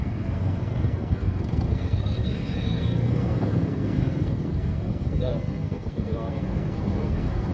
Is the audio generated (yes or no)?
yes